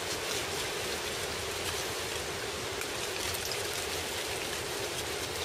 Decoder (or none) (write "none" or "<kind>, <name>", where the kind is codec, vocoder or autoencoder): none